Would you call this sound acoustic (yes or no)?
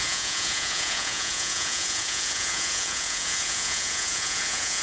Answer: no